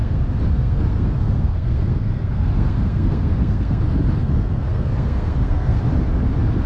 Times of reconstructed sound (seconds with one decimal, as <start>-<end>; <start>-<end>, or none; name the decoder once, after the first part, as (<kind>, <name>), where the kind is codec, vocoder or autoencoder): 0.0-3.8 (codec, SNAC); 4.2-5.8